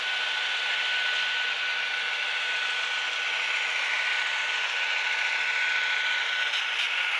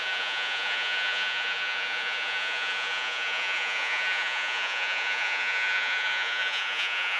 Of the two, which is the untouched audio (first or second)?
first